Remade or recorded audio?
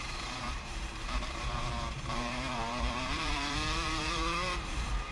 remade